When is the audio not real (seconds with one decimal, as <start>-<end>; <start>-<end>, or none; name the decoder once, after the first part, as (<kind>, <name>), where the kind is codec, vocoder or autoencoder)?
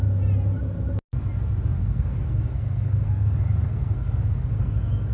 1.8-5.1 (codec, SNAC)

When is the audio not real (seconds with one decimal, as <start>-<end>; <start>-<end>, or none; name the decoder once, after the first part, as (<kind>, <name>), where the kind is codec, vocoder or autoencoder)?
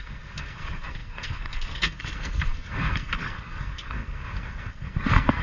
0.0-5.4 (codec, SNAC)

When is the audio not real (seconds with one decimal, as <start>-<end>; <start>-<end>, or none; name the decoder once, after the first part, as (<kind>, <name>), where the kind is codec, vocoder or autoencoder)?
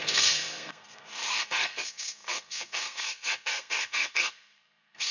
0.0-5.1 (codec, SNAC)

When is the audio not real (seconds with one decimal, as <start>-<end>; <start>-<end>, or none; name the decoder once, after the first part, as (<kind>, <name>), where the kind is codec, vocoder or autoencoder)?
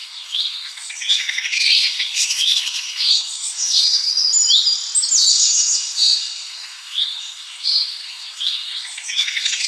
0.0-4.1 (codec, SNAC); 5.3-9.7